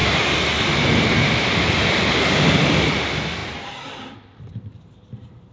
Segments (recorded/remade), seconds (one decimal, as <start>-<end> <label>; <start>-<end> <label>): 0.0-5.5 recorded